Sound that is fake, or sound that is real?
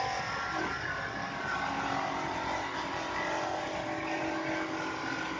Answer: real